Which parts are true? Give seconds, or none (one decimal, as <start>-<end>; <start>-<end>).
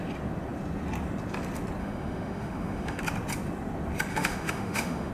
0.0-1.8; 3.0-4.1